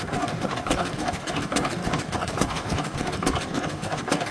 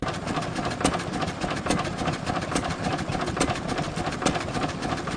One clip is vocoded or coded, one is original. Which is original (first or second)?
second